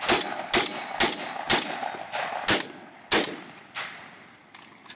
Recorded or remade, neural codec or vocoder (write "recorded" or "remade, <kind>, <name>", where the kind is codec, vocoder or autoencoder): recorded